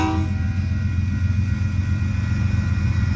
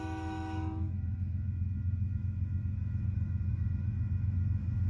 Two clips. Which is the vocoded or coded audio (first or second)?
second